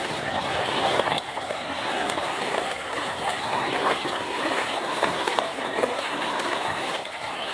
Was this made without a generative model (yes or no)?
no